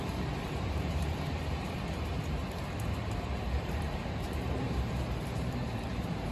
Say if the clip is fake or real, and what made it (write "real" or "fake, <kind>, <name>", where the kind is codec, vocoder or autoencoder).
fake, vocoder, BigVGAN v2